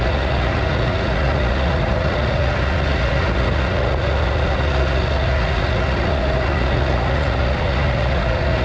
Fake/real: fake